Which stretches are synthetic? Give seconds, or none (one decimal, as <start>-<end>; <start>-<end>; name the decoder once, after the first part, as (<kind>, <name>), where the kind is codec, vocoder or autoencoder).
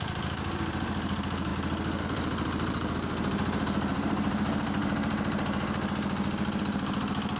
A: 0.0-1.5 (vocoder, BigVGAN v2); 2.0-7.4